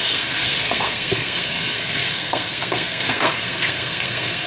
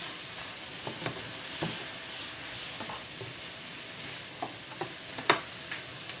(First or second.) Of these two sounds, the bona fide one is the second